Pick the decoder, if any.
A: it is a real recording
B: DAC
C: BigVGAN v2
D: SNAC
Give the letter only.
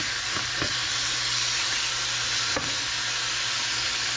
A